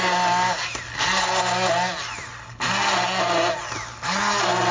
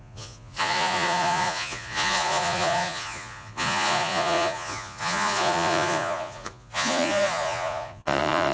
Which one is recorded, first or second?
first